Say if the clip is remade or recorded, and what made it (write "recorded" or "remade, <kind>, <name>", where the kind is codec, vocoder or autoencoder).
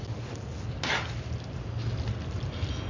recorded